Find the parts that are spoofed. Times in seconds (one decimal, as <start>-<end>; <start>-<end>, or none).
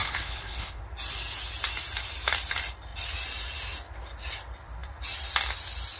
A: 0.0-0.8